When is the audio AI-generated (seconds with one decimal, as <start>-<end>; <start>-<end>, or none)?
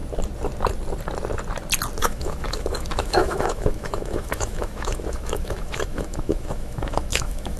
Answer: 2.0-7.6